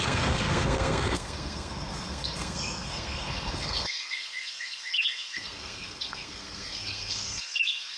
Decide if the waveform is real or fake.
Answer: fake